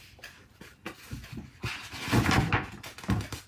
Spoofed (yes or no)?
no